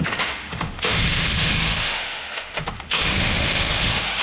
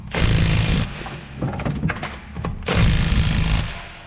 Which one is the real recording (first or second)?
second